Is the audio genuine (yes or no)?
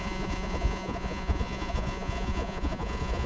no